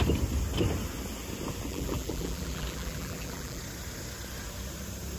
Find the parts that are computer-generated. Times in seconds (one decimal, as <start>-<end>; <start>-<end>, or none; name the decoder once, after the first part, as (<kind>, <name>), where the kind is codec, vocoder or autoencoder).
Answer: 1.7-3.6 (vocoder, BigVGAN v2)